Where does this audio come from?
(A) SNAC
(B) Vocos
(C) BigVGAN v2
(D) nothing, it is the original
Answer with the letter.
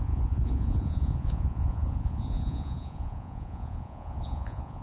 B